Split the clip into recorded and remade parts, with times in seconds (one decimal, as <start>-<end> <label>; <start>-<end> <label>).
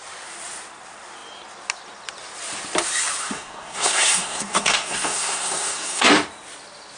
0.0-3.2 recorded; 3.2-6.1 remade; 6.1-7.0 recorded